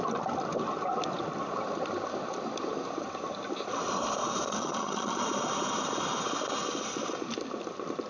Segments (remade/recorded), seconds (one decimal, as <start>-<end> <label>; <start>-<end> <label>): 0.0-4.5 recorded; 4.5-5.2 remade; 5.2-8.1 recorded